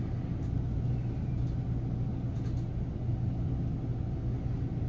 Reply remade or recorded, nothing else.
recorded